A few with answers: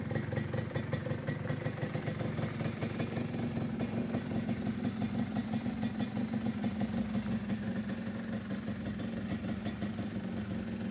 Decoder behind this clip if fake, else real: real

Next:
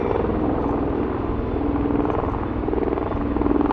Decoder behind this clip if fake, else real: real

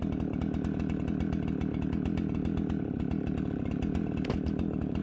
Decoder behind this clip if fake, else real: real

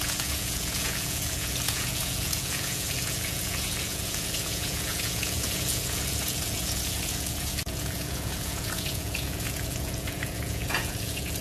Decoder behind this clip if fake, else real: fake, vocoder, Vocos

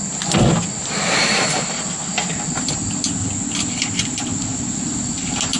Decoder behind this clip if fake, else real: real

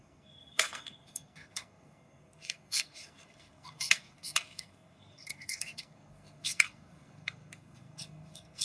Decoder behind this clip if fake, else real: fake, codec, SNAC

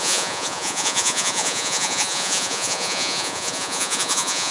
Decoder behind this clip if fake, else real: fake, vocoder, Vocos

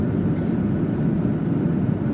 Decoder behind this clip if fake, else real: real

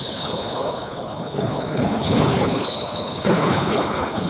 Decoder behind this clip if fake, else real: fake, codec, HILCodec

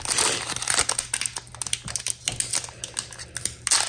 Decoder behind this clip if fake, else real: real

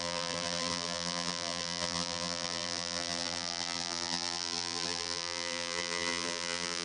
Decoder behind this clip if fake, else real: fake, vocoder, BigVGAN v2